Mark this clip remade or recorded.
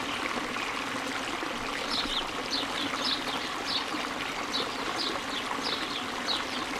recorded